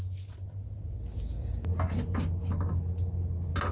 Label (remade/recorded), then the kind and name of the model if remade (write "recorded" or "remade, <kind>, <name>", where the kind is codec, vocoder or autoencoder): recorded